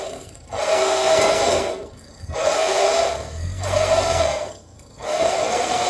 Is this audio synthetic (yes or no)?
yes